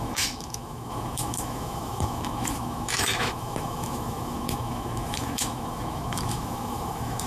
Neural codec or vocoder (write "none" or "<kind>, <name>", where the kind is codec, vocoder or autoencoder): autoencoder, DAC-VAE